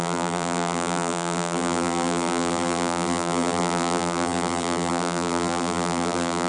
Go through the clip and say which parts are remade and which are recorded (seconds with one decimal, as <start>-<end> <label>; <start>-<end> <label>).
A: 0.0-6.5 remade